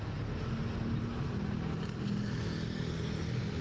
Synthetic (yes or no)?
no